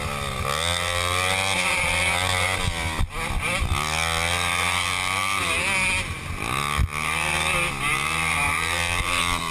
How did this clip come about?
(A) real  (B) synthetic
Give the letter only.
A